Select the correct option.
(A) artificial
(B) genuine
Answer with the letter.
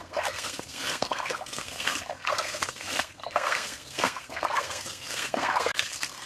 A